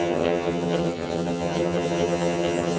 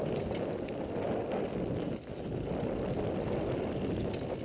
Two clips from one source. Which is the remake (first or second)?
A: first